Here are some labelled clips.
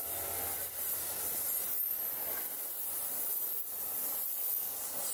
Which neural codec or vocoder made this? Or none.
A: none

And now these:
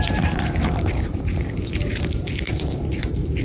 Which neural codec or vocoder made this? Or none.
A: vocoder, BigVGAN v2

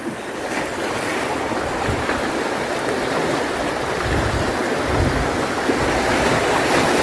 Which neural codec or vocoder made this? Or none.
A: vocoder, BigVGAN v2